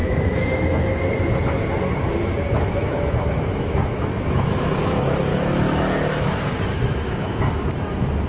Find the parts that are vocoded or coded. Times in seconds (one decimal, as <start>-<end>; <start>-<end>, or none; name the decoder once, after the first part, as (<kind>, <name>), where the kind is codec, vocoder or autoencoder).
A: 0.0-1.0 (autoencoder, DAC-VAE); 2.1-4.8; 5.3-7.4